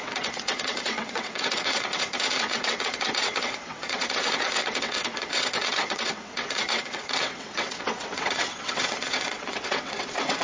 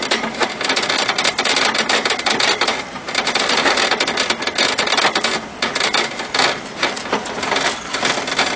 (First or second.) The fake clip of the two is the first